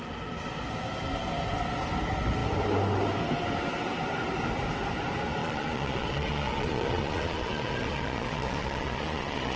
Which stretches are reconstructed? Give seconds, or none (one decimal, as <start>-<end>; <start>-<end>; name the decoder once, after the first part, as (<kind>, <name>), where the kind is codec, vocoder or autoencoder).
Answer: 5.4-9.6 (vocoder, Vocos)